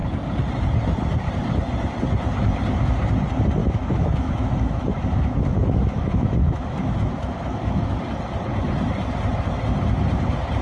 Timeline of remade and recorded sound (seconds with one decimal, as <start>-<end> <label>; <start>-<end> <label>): 0.0-3.6 recorded; 3.6-8.0 remade; 8.0-10.6 recorded